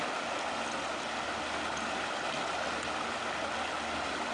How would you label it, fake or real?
real